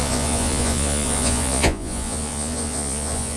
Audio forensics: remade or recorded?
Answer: remade